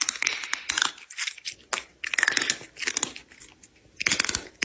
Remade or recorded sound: recorded